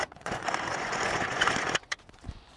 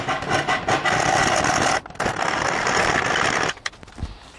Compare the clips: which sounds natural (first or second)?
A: second